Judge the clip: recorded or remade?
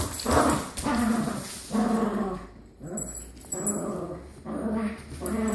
recorded